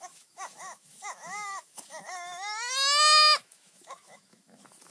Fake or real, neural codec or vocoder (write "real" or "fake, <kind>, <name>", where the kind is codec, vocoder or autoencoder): fake, autoencoder, DAC-VAE